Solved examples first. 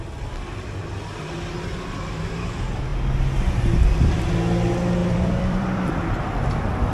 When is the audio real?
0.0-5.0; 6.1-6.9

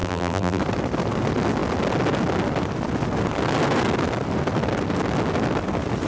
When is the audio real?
0.6-6.1

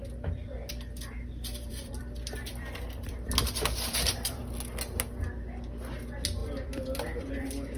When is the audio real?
0.7-1.6; 4.4-6.4; 7.3-7.8

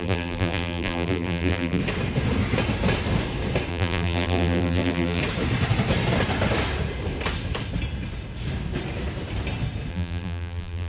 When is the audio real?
1.8-3.7; 5.2-9.9